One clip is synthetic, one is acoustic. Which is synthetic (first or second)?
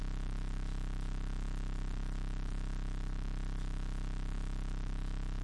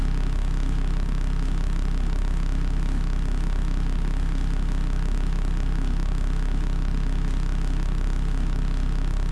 second